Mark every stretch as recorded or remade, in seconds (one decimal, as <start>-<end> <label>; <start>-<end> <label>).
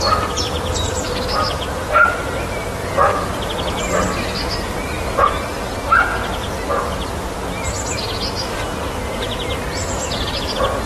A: 0.0-9.8 recorded; 9.8-10.5 remade; 10.5-10.9 recorded